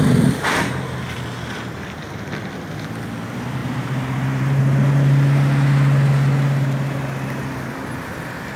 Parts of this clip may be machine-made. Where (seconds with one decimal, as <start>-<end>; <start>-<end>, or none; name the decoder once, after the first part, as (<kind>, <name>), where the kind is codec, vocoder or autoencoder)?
3.6-4.6 (vocoder, BigVGAN v2)